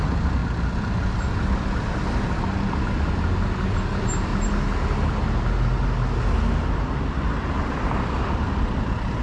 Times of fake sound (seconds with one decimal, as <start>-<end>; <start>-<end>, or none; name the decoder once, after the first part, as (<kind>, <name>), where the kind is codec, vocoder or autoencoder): 0.0-0.4 (vocoder, BigVGAN v2); 3.7-4.3; 7.5-9.2